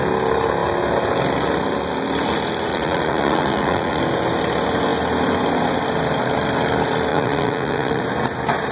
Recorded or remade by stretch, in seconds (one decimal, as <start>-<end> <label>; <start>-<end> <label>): 0.0-2.7 recorded; 2.7-4.0 remade; 4.0-7.1 recorded; 7.1-8.0 remade; 8.0-8.7 recorded